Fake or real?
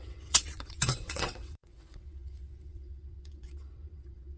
fake